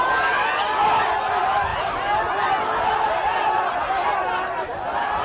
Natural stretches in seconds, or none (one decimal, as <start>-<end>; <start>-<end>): 0.0-5.2